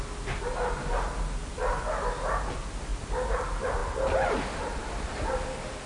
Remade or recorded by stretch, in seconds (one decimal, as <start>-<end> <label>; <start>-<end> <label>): 0.0-2.9 recorded; 2.9-3.4 remade; 3.4-5.9 recorded